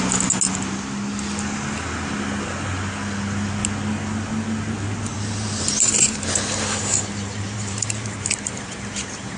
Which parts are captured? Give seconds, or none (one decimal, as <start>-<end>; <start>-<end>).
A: 0.0-5.1

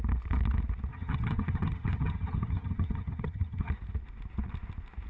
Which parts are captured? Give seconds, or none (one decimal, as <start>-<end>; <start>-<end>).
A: 0.0-0.9; 3.7-5.1

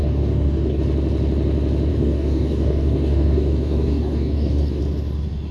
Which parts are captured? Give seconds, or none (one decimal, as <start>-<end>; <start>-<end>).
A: 0.8-1.9; 4.8-5.5

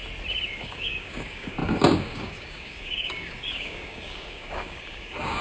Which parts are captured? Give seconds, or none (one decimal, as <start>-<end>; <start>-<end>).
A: 0.0-0.5

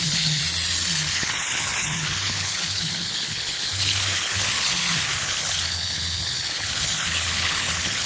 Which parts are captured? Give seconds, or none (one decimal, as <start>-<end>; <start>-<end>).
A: 0.4-1.1

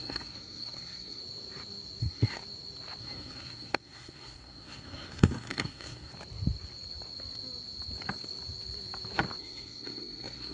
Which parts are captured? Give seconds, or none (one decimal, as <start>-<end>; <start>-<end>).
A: 1.2-2.0; 2.4-3.0; 6.1-9.4